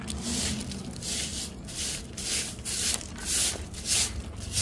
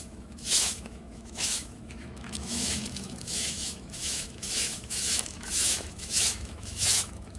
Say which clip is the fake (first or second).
second